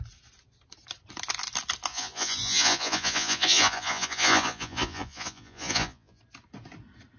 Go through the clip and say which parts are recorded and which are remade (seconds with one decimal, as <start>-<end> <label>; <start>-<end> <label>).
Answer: 0.0-1.9 recorded; 1.9-6.2 remade; 6.2-7.2 recorded